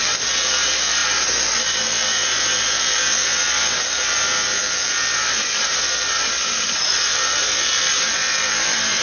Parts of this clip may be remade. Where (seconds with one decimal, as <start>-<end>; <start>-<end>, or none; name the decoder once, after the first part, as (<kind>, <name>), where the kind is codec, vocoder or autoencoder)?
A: 0.0-9.0 (vocoder, BigVGAN v2)